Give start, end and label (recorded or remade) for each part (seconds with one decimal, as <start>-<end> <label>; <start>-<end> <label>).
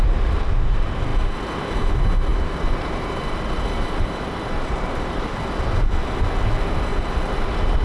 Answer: 0.0-2.3 recorded; 2.3-5.4 remade; 5.4-6.9 recorded; 6.9-7.8 remade